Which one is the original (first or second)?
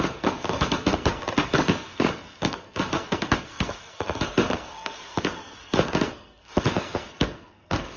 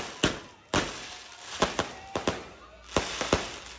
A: second